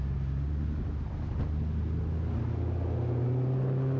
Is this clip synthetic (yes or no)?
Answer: no